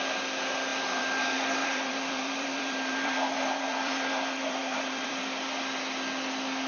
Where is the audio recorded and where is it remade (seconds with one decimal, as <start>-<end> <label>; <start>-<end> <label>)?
0.0-0.7 recorded; 0.7-1.2 remade; 1.2-1.6 recorded; 1.6-5.6 remade; 5.6-6.7 recorded

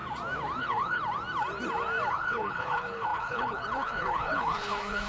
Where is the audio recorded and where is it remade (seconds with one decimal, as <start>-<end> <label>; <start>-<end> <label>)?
0.0-0.6 recorded; 0.6-1.0 remade; 1.0-2.1 recorded; 2.1-5.1 remade

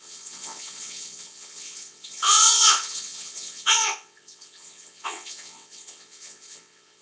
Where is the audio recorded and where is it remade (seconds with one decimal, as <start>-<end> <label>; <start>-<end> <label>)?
0.0-7.0 remade

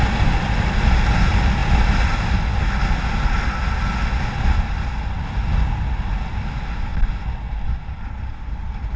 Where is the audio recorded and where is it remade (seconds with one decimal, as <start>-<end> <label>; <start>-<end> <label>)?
0.0-9.0 recorded

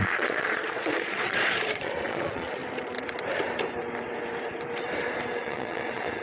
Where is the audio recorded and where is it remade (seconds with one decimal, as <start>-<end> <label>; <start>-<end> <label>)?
0.0-2.6 remade; 2.6-5.4 recorded; 5.4-6.2 remade